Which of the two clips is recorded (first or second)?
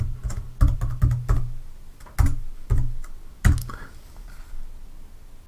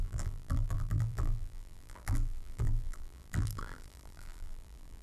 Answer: first